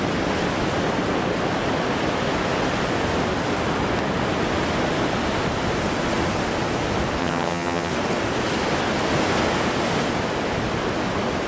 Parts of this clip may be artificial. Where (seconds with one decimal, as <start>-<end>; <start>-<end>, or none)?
7.2-7.9